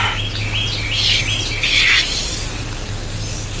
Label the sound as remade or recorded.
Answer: recorded